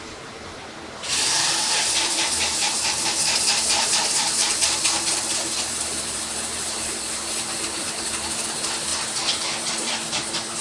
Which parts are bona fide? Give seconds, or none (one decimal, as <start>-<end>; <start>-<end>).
8.9-9.7